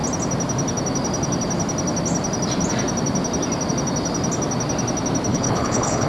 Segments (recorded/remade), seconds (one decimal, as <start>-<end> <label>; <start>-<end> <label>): 0.0-5.3 recorded; 5.3-6.1 remade